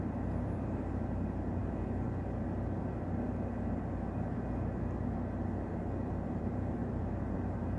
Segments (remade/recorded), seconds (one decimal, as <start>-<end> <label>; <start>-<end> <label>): 0.0-1.6 remade; 1.6-6.3 recorded; 6.3-7.8 remade